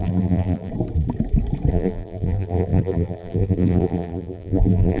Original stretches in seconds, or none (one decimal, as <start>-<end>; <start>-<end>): 0.7-1.7